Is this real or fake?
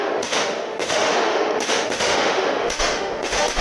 fake